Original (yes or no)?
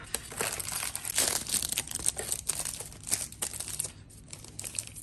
yes